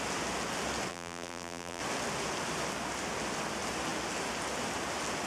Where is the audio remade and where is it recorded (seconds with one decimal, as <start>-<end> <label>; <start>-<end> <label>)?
0.0-0.9 recorded; 0.9-1.8 remade; 1.8-5.3 recorded

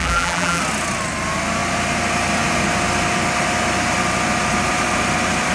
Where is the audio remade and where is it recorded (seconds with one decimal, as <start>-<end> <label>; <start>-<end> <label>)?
0.0-0.6 remade; 0.6-5.5 recorded